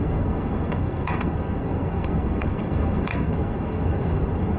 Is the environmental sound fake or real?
fake